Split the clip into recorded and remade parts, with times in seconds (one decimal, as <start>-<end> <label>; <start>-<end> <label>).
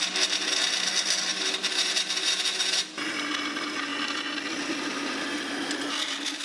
0.0-6.4 recorded